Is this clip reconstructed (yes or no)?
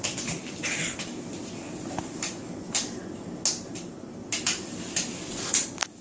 no